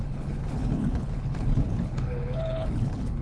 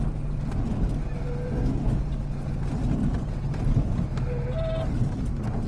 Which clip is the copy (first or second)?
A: first